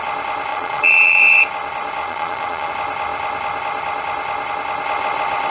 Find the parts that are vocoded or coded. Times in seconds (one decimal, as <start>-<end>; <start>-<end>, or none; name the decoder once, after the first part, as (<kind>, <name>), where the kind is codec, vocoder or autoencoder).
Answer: 0.5-1.2 (vocoder, Vocos); 2.0-2.7